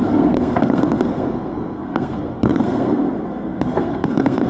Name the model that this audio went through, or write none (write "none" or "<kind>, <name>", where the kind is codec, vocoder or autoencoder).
codec, SNAC